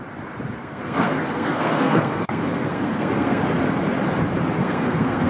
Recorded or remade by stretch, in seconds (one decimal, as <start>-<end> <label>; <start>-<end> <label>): 0.0-0.6 recorded; 0.6-3.4 remade; 3.4-4.6 recorded; 4.6-5.3 remade